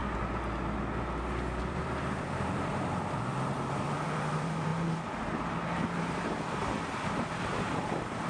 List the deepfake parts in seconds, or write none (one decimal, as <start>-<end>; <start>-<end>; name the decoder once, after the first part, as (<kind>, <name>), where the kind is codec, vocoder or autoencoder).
1.8-4.7 (vocoder, BigVGAN v2); 6.0-8.3